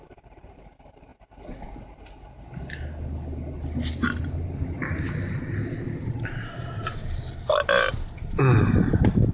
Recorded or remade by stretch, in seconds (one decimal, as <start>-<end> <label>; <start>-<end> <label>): 0.0-1.1 remade; 1.1-6.1 recorded; 6.1-7.0 remade; 7.0-8.4 recorded; 8.4-9.3 remade